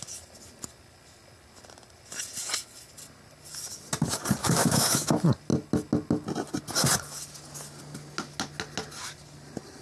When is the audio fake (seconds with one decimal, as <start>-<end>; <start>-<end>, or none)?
4.4-5.1